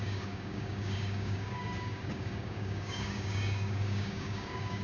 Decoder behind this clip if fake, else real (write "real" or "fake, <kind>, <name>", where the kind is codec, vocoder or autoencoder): fake, codec, DAC